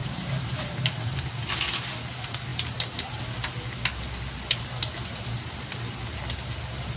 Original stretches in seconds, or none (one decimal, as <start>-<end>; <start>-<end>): 1.1-2.5; 3.2-7.0